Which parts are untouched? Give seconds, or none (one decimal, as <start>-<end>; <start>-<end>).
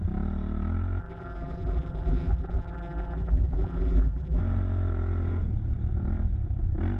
0.0-1.0; 4.4-7.0